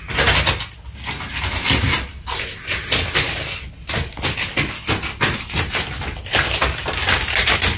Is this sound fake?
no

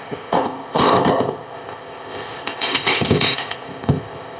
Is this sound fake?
yes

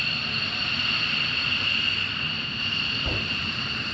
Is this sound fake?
no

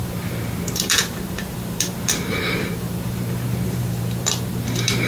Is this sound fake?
yes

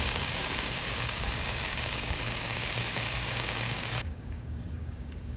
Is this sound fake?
yes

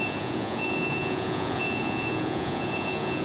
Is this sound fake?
yes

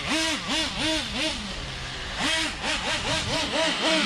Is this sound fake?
no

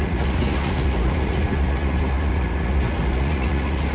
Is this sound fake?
yes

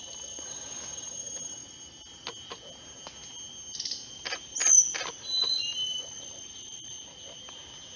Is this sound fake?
no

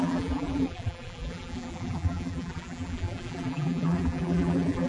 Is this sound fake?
yes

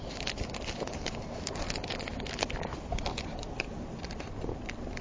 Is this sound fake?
no